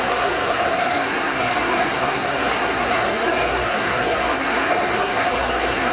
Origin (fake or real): fake